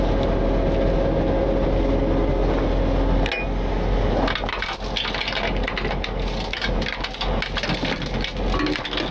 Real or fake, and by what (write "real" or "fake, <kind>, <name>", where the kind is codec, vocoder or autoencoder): real